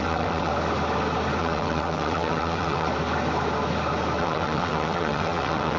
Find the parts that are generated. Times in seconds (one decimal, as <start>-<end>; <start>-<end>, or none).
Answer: 0.0-0.5; 1.4-2.9; 4.2-5.8